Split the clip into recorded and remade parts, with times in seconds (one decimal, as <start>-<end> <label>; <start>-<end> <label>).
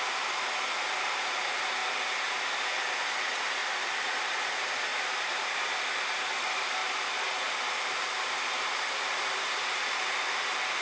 0.0-3.6 recorded; 3.6-4.4 remade; 4.4-4.9 recorded; 4.9-5.6 remade; 5.6-10.8 recorded